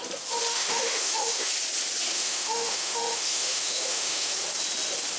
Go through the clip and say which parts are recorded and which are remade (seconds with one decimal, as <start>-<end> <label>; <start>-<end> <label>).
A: 0.0-0.5 recorded; 0.5-1.5 remade; 1.5-2.1 recorded; 2.1-4.3 remade; 4.3-5.2 recorded